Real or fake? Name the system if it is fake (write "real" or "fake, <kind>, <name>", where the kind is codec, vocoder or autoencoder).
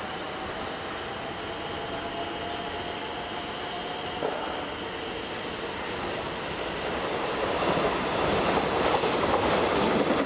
real